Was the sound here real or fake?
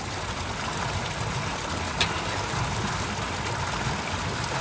real